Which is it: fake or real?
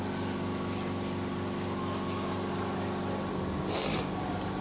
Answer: real